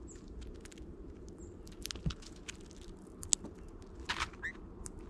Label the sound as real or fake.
real